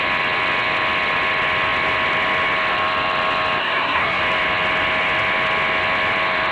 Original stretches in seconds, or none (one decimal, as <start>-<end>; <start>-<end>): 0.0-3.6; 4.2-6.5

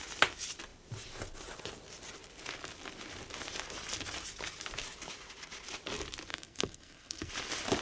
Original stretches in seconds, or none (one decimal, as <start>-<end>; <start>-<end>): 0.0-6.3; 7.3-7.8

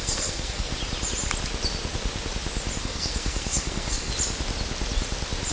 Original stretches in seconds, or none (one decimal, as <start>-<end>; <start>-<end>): 0.7-2.8; 4.1-5.5

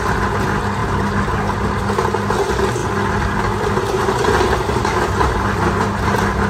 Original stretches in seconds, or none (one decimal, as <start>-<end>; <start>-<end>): 0.0-6.5